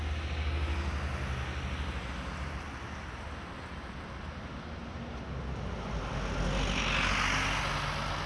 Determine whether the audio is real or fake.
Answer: real